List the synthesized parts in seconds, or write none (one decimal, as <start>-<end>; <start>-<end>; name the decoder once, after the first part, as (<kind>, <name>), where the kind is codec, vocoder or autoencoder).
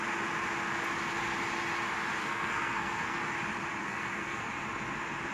2.2-3.2 (codec, SNAC); 3.8-4.5